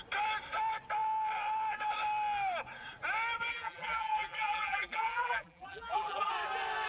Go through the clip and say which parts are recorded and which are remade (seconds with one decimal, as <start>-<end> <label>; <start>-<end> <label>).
0.0-3.5 recorded; 3.5-6.3 remade; 6.3-6.9 recorded